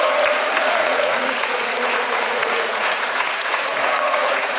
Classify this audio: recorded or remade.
remade